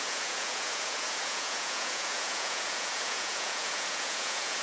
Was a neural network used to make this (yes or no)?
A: yes